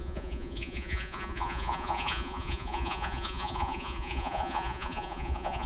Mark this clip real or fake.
fake